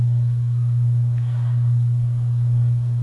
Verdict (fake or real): fake